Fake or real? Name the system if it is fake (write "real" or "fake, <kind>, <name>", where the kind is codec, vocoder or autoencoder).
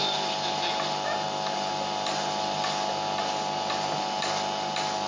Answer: real